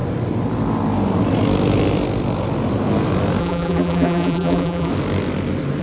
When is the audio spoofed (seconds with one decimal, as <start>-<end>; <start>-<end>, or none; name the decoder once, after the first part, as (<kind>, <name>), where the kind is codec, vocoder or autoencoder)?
3.4-4.9 (vocoder, BigVGAN v2)